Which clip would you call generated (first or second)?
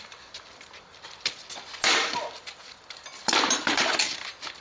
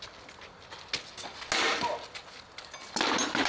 first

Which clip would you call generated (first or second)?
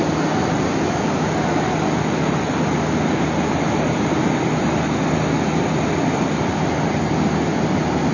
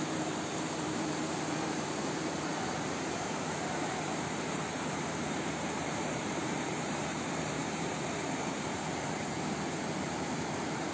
second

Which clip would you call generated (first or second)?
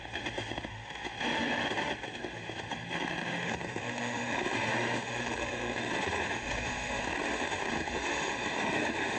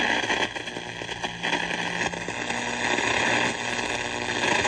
first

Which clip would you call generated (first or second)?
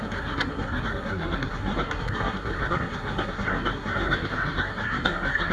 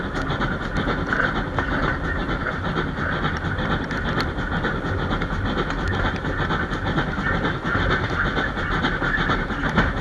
first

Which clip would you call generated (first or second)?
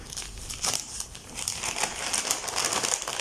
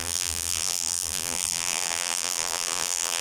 second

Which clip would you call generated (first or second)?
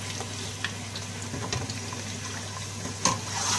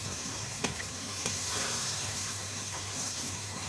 second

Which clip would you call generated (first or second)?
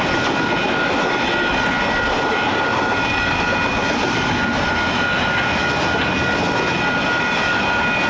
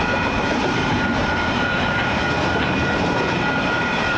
second